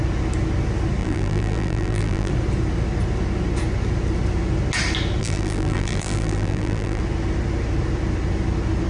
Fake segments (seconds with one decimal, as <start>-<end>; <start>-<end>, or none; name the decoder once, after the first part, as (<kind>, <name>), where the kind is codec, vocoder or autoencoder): 1.0-2.3 (vocoder, BigVGAN v2); 5.2-7.0